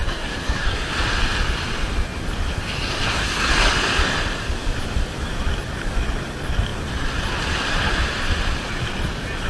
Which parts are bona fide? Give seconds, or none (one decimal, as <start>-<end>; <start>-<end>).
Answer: 0.9-2.9; 3.5-9.5